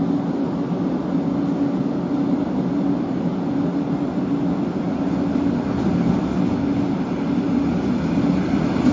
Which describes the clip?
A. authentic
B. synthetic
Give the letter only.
A